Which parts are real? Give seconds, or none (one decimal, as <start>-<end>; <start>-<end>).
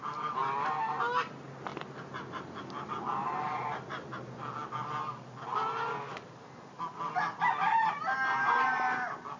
0.0-9.4